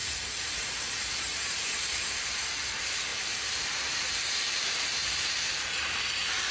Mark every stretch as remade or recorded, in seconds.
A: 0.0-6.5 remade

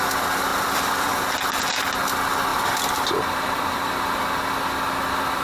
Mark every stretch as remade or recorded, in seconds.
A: 0.0-0.5 recorded; 0.5-1.1 remade; 1.1-2.5 recorded; 2.5-4.2 remade; 4.2-5.4 recorded

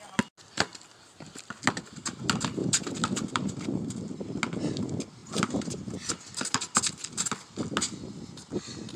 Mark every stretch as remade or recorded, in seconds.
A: 0.0-2.6 recorded; 2.6-4.4 remade; 4.4-5.2 recorded; 5.2-6.1 remade; 6.1-9.0 recorded

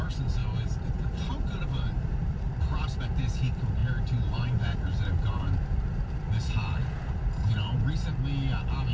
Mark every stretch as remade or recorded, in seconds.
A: 0.0-0.4 recorded; 0.4-3.0 remade; 3.0-3.8 recorded; 3.8-6.2 remade; 6.2-6.8 recorded; 6.8-7.8 remade; 7.8-8.9 recorded

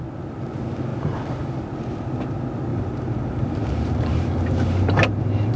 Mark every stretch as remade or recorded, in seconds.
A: 0.0-0.9 recorded; 0.9-1.6 remade; 1.6-2.7 recorded; 2.7-5.6 remade

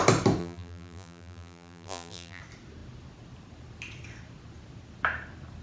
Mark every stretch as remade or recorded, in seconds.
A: 0.0-0.4 recorded; 0.4-2.4 remade; 2.4-5.6 recorded

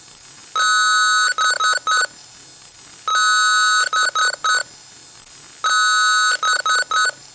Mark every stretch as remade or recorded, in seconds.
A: 0.0-7.3 recorded

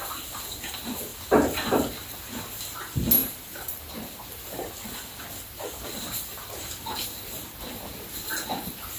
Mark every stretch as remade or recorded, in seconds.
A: 0.0-3.2 recorded; 3.2-4.7 remade; 4.7-6.3 recorded; 6.3-7.5 remade; 7.5-9.0 recorded